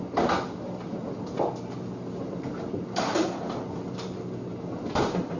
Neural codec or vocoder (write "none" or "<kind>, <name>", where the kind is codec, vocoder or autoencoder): none